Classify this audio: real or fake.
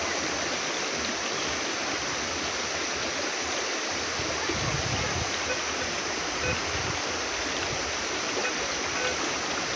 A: real